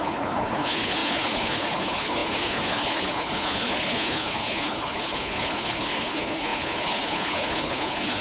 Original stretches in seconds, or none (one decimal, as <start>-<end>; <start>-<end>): none